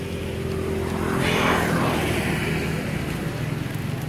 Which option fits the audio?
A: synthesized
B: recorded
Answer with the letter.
B